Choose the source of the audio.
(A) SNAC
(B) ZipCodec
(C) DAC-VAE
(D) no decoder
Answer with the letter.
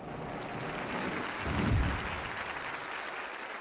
D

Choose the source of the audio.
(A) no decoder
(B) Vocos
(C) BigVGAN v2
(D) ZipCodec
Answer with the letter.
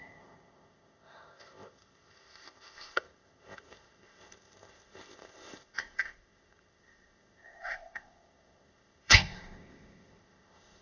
D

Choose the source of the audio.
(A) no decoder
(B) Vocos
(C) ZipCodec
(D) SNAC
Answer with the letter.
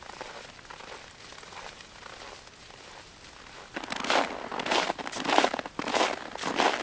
A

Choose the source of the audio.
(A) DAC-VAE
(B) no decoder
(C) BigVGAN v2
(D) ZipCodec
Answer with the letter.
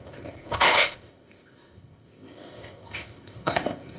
D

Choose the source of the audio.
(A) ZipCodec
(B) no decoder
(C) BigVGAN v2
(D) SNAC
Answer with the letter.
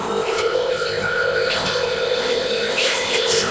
A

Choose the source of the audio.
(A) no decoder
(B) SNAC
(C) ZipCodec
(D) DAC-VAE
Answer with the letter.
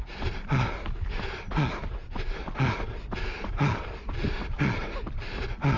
A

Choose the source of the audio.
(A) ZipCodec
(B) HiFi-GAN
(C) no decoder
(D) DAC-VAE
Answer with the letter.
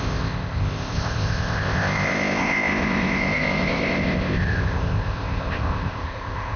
A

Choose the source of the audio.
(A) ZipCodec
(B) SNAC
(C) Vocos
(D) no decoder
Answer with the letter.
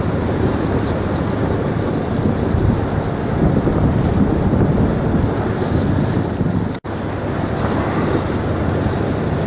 D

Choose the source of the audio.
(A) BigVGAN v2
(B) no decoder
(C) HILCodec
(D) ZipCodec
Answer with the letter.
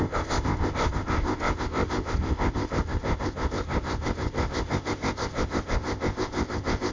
D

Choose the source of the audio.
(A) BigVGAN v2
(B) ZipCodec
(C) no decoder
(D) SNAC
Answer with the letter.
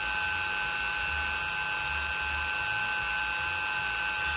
C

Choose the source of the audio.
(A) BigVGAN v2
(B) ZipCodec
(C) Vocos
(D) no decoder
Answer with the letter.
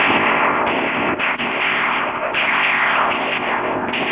B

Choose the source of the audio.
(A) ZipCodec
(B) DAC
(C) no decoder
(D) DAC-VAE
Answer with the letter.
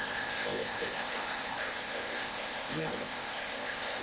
A